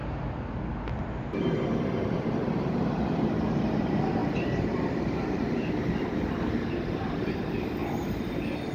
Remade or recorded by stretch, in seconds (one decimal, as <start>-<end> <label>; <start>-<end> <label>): 0.0-1.0 recorded; 1.0-7.8 remade; 7.8-8.7 recorded